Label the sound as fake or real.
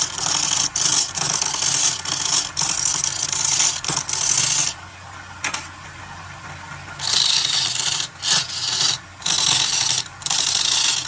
real